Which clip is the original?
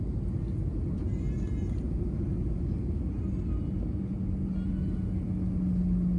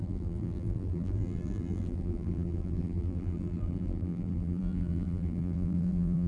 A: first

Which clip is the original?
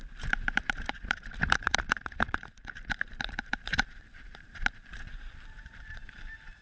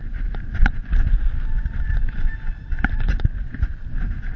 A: second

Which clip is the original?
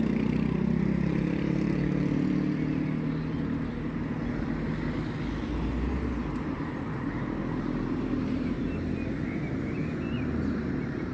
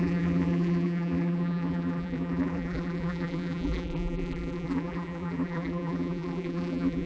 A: first